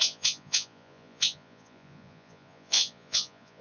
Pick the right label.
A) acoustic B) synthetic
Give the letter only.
B